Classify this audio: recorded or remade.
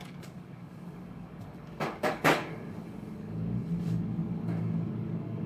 remade